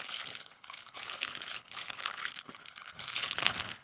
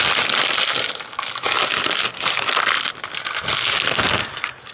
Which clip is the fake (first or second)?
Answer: first